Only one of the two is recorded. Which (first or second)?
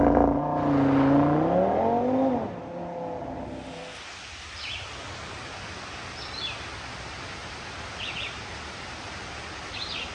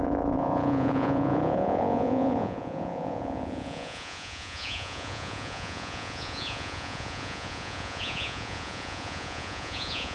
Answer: first